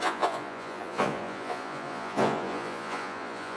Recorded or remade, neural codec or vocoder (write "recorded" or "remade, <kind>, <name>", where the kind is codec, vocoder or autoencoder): remade, vocoder, Vocos